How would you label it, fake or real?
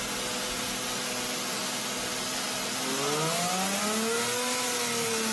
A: real